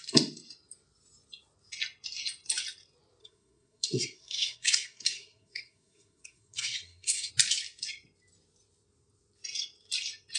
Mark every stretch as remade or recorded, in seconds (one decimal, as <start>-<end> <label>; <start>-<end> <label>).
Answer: 0.0-3.2 recorded; 3.2-7.3 remade; 7.3-10.4 recorded